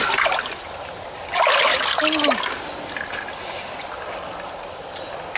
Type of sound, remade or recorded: recorded